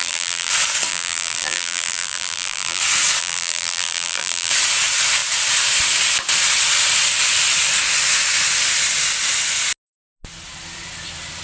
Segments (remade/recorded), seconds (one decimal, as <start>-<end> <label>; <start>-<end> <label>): 0.0-0.5 remade; 0.5-0.9 recorded; 0.9-2.8 remade; 2.8-3.2 recorded; 3.2-4.5 remade; 4.5-11.4 recorded